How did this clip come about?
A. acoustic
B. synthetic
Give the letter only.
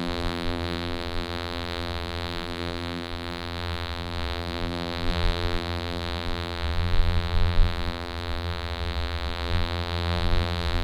B